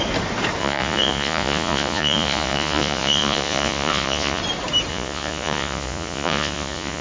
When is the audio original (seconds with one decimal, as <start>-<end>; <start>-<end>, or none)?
0.0-0.6; 4.4-4.9